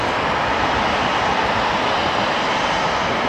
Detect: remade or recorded recorded